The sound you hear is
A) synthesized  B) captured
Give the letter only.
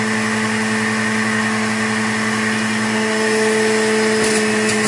B